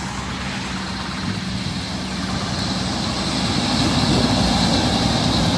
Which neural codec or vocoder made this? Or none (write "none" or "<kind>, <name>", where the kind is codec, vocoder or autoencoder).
none